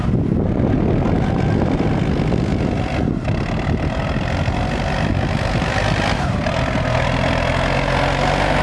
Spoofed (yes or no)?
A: no